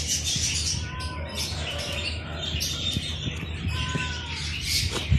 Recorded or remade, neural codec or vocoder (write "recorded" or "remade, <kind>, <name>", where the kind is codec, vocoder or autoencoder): recorded